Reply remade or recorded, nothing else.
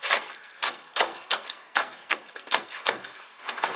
remade